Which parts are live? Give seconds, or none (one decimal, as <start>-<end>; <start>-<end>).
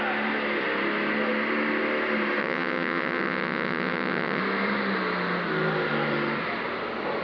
0.0-2.4; 4.4-7.2